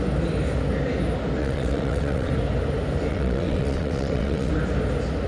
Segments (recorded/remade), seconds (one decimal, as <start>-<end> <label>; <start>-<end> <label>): 0.0-1.4 recorded; 1.4-2.3 remade; 2.3-3.1 recorded; 3.1-4.5 remade; 4.5-5.3 recorded